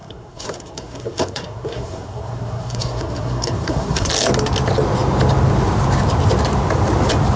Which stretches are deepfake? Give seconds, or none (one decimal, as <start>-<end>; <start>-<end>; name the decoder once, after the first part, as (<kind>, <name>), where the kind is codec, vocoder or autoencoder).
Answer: 0.0-4.1 (codec, SNAC)